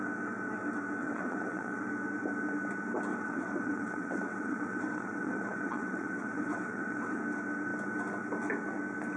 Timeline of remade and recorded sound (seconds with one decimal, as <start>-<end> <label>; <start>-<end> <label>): 0.0-1.0 recorded; 1.0-1.8 remade; 1.8-3.1 recorded; 3.1-7.2 remade; 7.2-9.2 recorded

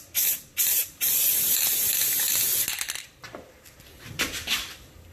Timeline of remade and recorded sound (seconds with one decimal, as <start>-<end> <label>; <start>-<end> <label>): 0.0-5.1 recorded

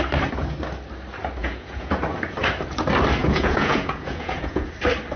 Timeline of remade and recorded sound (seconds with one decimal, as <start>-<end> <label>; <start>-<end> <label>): 0.0-1.4 recorded; 1.4-2.0 remade; 2.0-3.2 recorded; 3.2-4.7 remade; 4.7-5.2 recorded

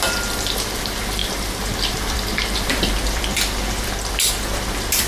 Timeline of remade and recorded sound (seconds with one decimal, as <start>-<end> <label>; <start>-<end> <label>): 0.0-5.1 remade